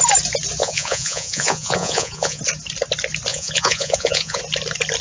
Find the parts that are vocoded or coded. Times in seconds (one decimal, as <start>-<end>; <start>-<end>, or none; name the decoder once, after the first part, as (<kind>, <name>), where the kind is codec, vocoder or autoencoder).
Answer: 0.6-2.4 (vocoder, Vocos); 3.3-4.4